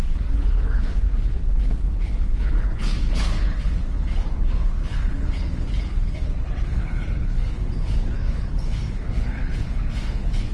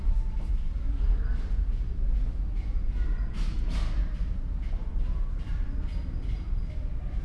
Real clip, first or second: second